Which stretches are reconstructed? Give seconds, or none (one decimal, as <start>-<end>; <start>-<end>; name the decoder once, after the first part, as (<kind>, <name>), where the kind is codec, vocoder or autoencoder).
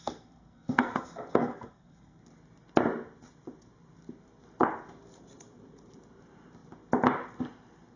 0.0-2.2 (codec, SNAC)